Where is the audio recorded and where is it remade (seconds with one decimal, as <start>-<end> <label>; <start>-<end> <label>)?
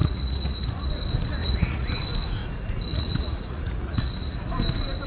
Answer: 0.0-0.9 remade; 0.9-1.4 recorded; 1.4-1.9 remade; 1.9-2.4 recorded; 2.4-4.5 remade; 4.5-5.1 recorded